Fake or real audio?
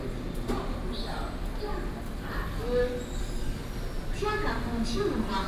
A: real